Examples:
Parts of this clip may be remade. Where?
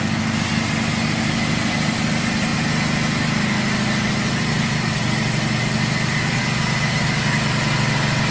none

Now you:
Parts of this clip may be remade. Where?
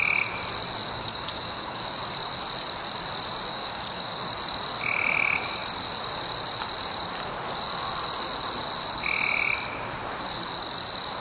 0.9-1.8; 3.5-4.2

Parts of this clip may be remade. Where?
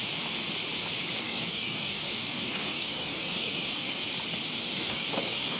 1.2-4.0; 4.6-5.6